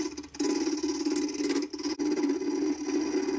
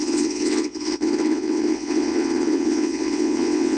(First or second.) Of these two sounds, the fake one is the second